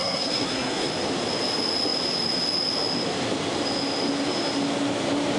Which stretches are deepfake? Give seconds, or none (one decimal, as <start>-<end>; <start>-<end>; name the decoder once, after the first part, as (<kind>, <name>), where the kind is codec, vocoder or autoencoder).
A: 0.0-0.9 (codec, SNAC)